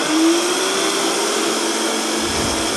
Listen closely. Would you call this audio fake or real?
real